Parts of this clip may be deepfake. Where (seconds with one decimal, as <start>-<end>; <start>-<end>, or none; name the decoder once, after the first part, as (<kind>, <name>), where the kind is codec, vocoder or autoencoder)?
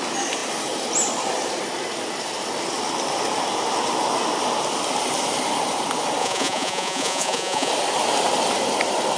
6.2-7.7 (vocoder, Vocos)